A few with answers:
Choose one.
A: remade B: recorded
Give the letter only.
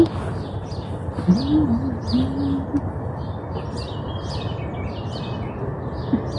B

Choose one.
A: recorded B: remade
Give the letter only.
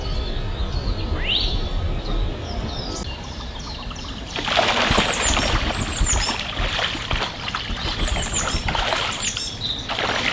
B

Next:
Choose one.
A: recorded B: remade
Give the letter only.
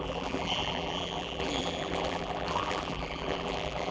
B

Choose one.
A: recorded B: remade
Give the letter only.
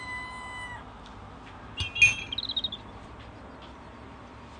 A